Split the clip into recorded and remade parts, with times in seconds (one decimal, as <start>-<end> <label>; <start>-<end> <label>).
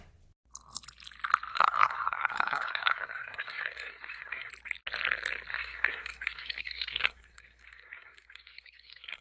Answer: 0.0-1.5 recorded; 1.5-4.5 remade; 4.5-5.5 recorded; 5.5-9.2 remade